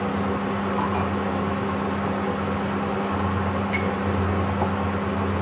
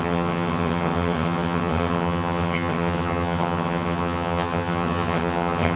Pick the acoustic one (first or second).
first